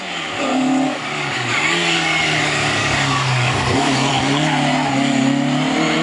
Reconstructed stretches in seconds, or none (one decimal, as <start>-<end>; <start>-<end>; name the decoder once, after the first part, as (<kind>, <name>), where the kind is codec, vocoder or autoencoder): 0.5-4.1 (codec, DAC)